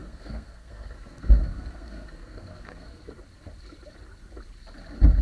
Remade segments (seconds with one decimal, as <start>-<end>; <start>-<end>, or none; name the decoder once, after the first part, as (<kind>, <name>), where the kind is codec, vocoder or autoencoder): 0.0-3.1 (codec, SNAC)